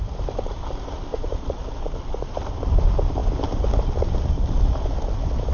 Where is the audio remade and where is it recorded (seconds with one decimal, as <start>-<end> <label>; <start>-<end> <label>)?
0.0-1.1 recorded; 1.1-1.6 remade; 1.6-5.5 recorded